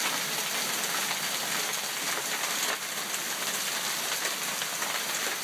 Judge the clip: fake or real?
real